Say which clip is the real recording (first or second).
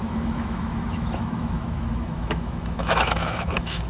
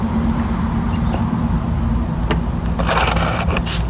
second